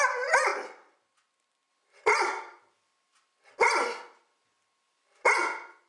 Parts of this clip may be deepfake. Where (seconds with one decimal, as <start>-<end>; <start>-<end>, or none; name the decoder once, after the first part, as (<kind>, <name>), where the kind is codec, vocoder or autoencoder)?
none